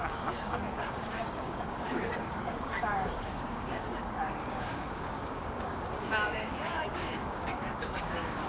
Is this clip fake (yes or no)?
yes